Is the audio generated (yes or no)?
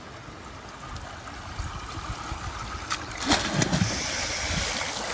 no